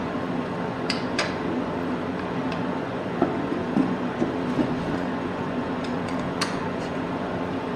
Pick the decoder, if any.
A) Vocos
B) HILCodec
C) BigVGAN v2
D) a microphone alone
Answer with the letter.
A